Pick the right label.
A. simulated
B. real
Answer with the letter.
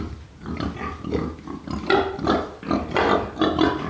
B